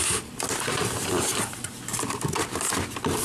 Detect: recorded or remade recorded